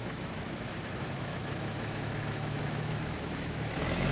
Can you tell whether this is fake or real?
fake